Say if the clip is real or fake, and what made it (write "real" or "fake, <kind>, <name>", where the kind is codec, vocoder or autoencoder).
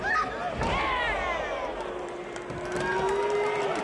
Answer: real